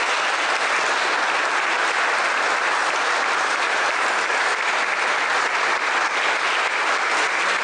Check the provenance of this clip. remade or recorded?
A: recorded